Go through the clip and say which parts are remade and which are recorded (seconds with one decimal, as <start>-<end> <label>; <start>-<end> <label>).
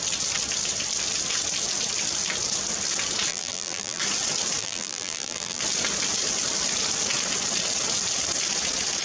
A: 0.0-3.3 recorded; 3.3-4.0 remade; 4.0-4.6 recorded; 4.6-5.6 remade; 5.6-9.0 recorded